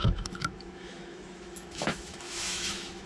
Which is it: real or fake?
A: fake